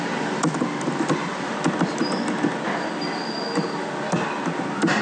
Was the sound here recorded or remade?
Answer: recorded